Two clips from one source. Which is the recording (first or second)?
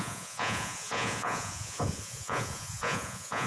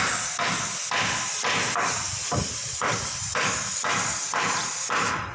second